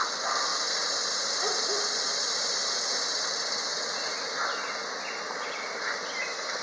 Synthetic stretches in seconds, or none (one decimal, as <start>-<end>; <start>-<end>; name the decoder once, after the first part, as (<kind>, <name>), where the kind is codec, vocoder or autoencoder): 0.5-2.6 (vocoder, BigVGAN v2)